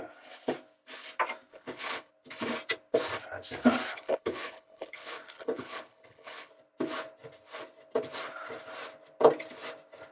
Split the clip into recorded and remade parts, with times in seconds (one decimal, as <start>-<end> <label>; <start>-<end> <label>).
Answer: 0.0-1.5 recorded; 1.5-2.1 remade; 2.1-3.9 recorded; 3.9-6.5 remade; 6.5-10.1 recorded